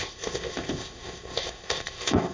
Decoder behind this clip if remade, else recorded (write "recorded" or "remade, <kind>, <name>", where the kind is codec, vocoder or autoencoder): remade, codec, ZipCodec